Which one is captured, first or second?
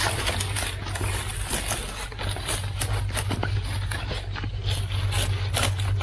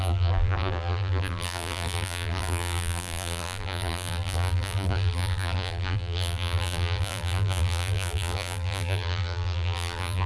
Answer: first